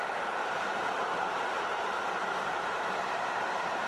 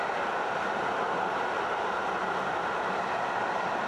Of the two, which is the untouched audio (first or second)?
second